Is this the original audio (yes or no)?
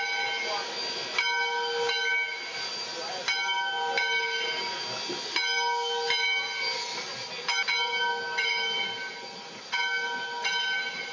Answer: yes